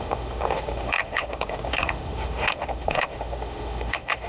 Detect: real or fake fake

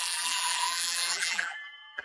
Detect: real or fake fake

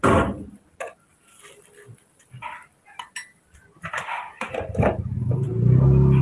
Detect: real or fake real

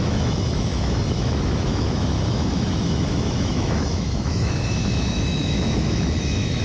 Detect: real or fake fake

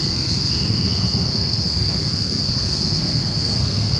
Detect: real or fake fake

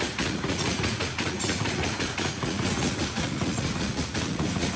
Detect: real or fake fake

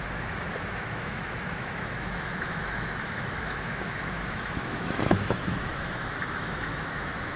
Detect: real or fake fake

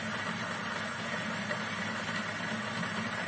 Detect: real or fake real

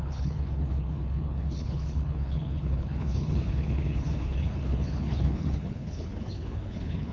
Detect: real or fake fake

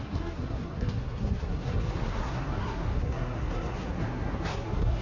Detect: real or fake fake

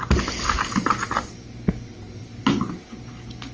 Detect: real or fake real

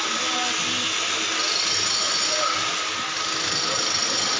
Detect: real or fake real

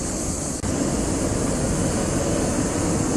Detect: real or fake real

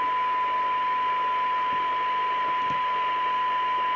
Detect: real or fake real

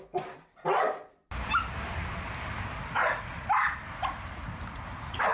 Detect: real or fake real